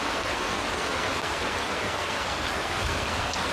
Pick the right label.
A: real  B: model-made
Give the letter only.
B